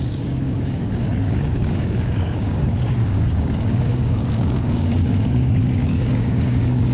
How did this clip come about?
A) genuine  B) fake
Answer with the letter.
B